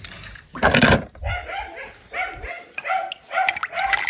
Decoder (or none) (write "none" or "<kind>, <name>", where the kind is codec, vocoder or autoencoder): none